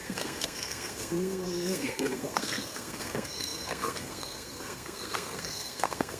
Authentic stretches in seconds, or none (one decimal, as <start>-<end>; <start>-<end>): none